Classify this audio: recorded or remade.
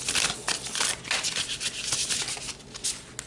recorded